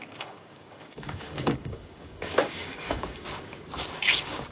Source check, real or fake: fake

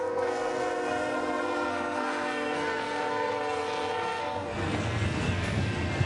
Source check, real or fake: fake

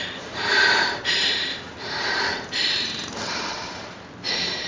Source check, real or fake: fake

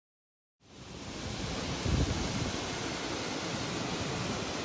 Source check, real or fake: real